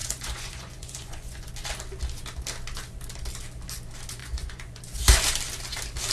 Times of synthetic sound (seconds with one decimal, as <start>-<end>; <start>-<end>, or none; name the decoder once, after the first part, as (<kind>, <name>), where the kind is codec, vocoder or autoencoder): 0.0-1.5 (vocoder, Vocos); 4.2-4.8